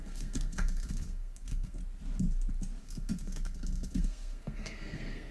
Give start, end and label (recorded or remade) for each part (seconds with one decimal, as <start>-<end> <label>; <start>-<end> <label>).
0.0-1.8 remade; 1.8-2.8 recorded; 2.8-5.3 remade